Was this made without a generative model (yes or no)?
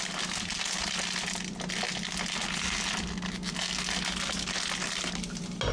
yes